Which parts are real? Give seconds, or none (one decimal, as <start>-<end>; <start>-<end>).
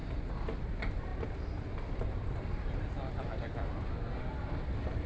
0.0-5.1